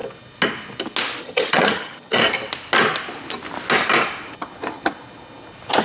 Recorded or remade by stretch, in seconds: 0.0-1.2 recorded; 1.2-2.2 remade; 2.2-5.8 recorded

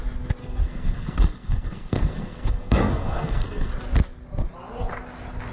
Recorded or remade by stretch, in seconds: 0.0-0.4 recorded; 0.4-3.7 remade; 3.7-5.5 recorded

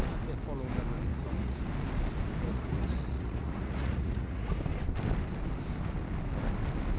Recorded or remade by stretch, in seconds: 0.0-1.1 recorded; 1.1-1.6 remade; 1.6-2.5 recorded; 2.5-4.5 remade; 4.5-7.0 recorded

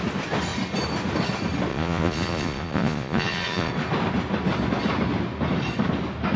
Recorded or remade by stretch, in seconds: 0.0-1.7 recorded; 1.7-3.7 remade; 3.7-6.4 recorded

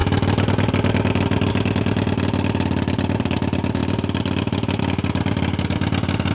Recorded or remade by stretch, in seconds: 0.0-6.3 recorded